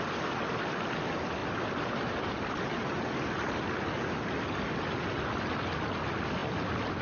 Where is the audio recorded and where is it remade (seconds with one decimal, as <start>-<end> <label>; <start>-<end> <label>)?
0.0-7.0 recorded